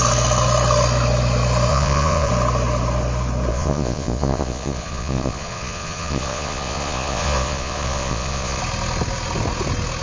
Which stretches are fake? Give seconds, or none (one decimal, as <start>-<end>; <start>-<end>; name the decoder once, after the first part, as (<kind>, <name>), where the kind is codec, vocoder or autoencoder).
1.7-2.3 (vocoder, Vocos); 3.5-8.6

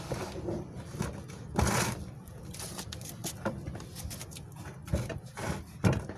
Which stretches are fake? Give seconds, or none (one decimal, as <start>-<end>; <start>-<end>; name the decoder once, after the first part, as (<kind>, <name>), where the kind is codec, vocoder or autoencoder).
none

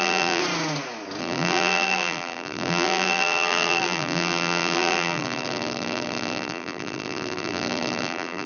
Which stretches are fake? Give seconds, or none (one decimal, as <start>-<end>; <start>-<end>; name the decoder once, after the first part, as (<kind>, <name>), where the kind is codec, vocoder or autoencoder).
0.0-0.4 (vocoder, BigVGAN v2); 1.2-8.5

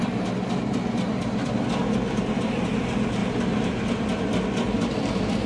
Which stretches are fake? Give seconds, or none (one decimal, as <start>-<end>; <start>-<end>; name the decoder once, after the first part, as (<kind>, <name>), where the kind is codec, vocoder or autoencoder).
none